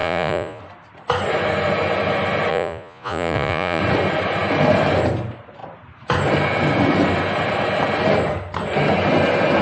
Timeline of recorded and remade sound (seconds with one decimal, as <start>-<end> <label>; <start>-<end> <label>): 0.0-0.6 remade; 0.6-2.5 recorded; 2.5-3.8 remade; 3.8-9.6 recorded